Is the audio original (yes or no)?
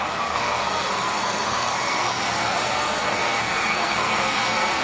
no